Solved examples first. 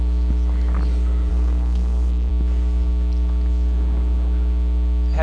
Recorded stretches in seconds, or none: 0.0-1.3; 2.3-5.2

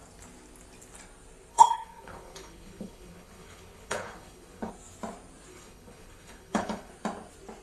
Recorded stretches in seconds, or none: 0.0-1.5; 4.7-5.5; 6.9-7.6

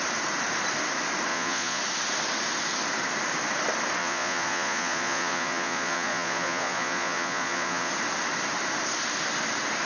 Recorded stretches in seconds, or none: 0.0-1.3; 1.8-4.0; 7.9-9.8

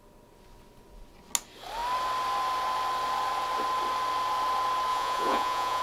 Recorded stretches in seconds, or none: 0.0-4.9

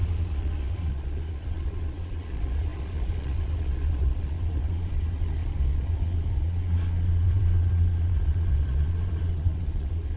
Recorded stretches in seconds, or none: none